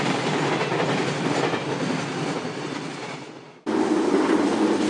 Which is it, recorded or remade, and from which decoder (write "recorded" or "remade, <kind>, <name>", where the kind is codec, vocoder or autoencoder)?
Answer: recorded